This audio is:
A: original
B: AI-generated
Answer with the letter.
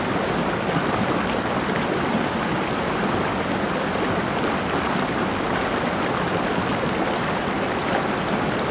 A